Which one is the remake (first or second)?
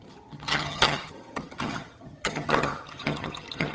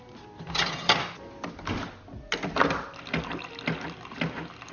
first